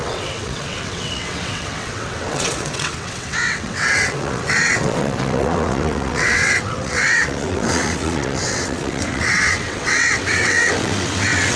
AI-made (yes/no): yes